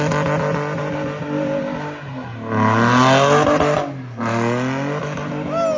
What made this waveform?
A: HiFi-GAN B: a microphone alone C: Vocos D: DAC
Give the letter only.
B